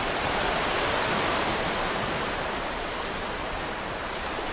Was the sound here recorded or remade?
remade